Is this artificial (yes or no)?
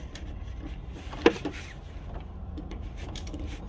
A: no